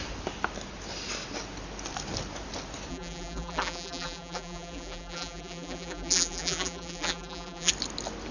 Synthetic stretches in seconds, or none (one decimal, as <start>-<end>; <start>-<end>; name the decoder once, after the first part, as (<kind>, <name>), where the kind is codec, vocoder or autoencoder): 2.9-7.7 (vocoder, BigVGAN v2)